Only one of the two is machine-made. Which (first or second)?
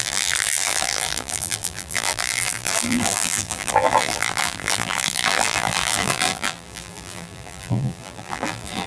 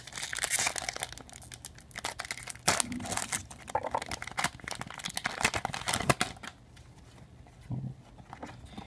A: first